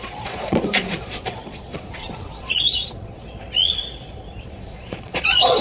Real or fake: fake